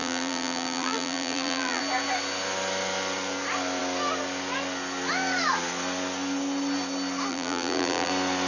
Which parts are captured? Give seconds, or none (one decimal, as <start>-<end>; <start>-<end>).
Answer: 1.8-7.3; 8.1-8.5